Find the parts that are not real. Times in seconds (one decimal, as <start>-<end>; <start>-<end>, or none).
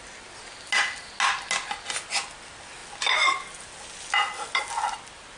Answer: none